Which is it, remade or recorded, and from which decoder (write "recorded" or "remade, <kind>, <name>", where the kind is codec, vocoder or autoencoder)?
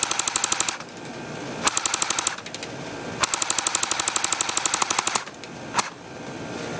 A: recorded